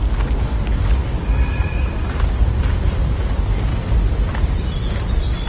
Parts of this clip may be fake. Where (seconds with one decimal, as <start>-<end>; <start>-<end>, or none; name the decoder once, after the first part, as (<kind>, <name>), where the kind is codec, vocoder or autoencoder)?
none

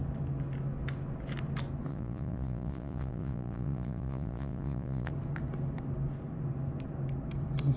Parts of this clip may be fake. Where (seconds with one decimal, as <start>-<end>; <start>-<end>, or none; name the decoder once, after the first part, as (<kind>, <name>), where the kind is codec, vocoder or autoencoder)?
1.9-5.1 (vocoder, Vocos)

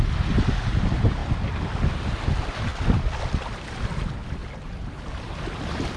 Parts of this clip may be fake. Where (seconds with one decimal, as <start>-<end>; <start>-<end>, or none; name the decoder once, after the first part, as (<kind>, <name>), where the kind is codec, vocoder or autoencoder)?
none

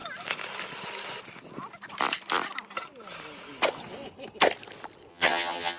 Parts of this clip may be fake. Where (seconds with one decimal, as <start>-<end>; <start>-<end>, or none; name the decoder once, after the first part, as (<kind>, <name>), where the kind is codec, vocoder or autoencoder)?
5.1-5.8 (vocoder, HiFi-GAN)

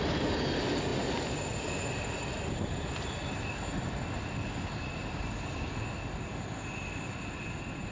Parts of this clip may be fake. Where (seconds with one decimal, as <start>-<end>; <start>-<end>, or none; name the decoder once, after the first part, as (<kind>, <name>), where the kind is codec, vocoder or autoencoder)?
none

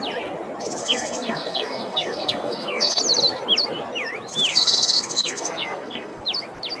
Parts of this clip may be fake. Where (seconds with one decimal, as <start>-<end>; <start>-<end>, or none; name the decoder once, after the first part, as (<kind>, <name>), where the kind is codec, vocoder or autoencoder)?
0.8-3.0 (codec, SNAC); 4.5-6.2